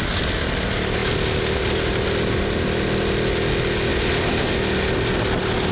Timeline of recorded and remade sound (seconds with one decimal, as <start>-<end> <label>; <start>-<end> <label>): 0.0-3.9 recorded; 3.9-4.5 remade; 4.5-5.7 recorded